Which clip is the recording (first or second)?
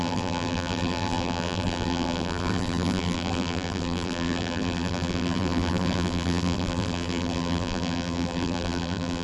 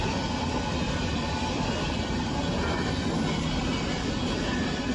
second